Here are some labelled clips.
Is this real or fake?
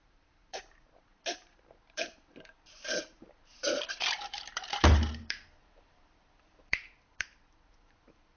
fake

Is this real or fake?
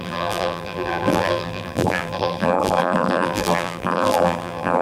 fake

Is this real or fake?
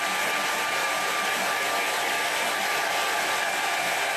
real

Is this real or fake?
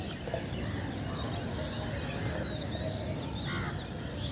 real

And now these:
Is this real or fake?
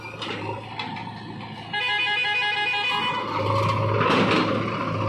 real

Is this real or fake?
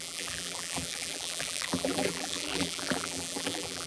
fake